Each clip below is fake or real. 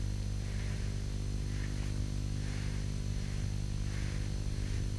real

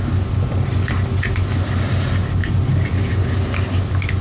real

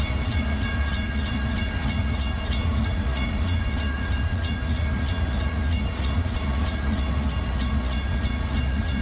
fake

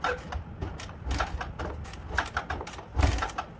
real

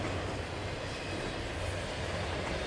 real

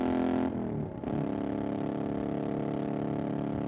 real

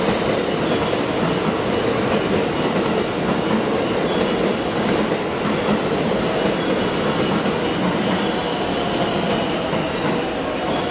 real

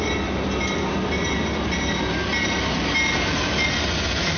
real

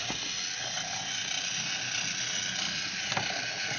real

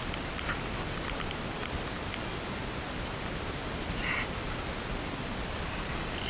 real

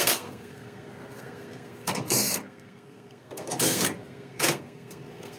fake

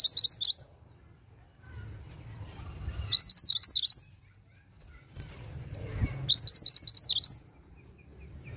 real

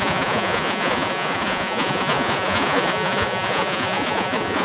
fake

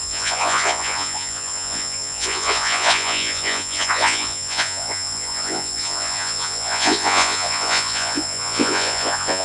fake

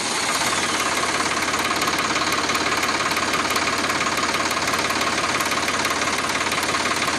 real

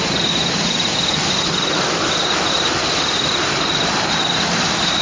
real